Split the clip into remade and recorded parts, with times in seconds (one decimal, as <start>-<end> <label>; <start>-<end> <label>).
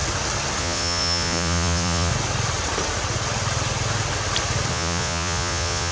0.0-0.6 recorded; 0.6-2.1 remade; 2.1-4.7 recorded; 4.7-5.9 remade